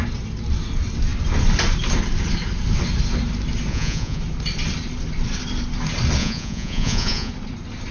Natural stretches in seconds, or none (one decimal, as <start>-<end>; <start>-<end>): 0.0-3.7; 4.2-6.2; 7.3-7.9